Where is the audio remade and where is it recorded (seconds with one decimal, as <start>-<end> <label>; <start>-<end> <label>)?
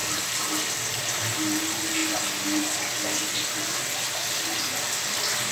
0.0-5.5 recorded